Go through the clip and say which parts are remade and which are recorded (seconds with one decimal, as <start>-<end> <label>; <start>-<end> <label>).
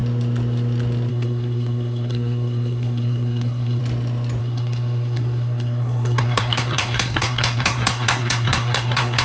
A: 0.0-1.1 recorded; 1.1-3.8 remade; 3.8-4.4 recorded; 4.4-9.2 remade